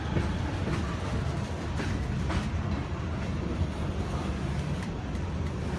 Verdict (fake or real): real